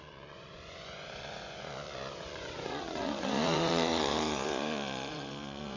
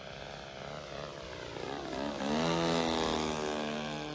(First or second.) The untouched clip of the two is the second